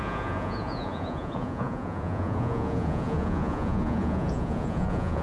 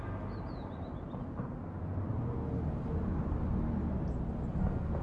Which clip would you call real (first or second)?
second